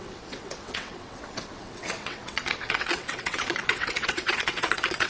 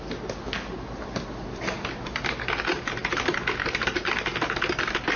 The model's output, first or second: first